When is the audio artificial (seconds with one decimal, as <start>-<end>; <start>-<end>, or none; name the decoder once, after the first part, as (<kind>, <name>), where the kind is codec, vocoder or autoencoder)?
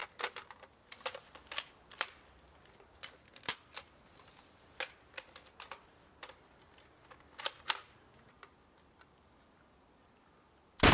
none